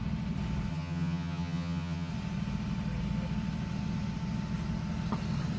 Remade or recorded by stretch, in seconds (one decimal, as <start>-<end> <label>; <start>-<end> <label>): 0.0-0.7 recorded; 0.7-2.1 remade; 2.1-5.6 recorded